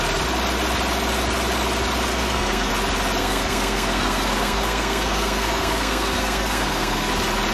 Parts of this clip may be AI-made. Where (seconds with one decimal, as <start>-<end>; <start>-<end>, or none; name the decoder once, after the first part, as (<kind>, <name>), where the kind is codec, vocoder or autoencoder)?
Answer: 2.1-2.7 (codec, SNAC); 3.2-7.1